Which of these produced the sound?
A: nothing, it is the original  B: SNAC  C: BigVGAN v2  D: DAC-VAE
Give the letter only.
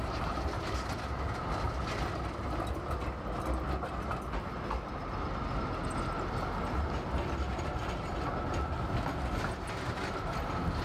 A